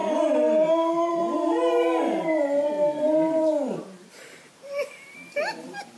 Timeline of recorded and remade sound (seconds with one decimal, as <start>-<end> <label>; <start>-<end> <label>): 0.0-1.1 recorded; 1.1-6.0 remade